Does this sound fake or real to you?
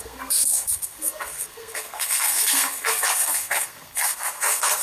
fake